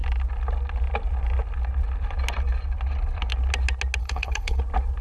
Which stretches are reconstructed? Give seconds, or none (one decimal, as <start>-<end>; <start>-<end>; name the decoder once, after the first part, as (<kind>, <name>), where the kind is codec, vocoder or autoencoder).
4.0-4.6 (codec, HILCodec)